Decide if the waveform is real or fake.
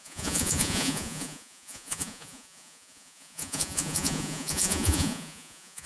fake